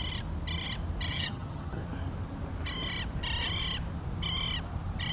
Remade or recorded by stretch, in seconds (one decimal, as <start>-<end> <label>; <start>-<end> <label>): 0.0-1.1 recorded; 1.1-1.8 remade; 1.8-5.1 recorded